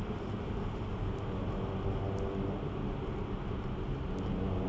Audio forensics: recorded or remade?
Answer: recorded